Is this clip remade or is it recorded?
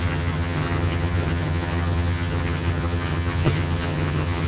remade